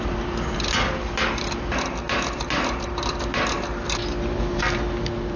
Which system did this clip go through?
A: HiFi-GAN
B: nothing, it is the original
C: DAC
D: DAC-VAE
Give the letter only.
B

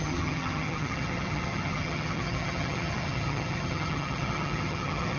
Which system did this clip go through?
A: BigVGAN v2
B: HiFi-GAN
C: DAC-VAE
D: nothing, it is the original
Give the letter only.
B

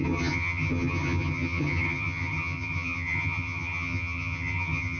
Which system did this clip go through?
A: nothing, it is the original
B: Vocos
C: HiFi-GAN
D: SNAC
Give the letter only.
C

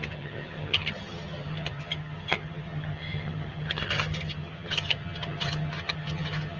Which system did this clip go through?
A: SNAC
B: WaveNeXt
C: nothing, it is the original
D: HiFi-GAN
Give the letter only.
D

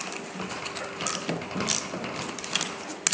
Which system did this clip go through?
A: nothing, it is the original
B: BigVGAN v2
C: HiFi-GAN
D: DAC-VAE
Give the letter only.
A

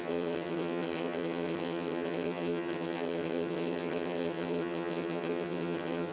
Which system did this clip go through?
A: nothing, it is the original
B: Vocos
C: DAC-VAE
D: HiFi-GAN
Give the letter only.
D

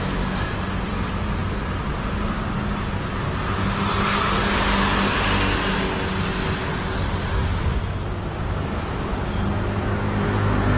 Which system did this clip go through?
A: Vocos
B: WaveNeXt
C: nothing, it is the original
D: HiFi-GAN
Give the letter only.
C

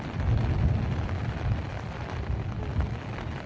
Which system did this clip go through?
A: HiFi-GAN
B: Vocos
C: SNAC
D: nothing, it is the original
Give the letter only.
D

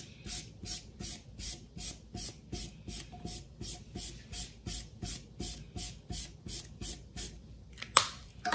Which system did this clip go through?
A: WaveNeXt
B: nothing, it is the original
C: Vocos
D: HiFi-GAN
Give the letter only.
B